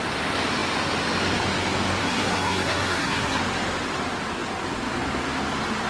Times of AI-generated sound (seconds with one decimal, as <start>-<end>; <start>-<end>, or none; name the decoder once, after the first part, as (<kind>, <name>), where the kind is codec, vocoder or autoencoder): 2.0-3.4 (codec, SNAC)